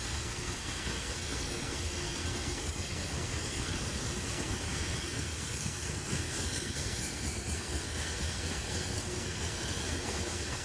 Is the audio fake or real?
fake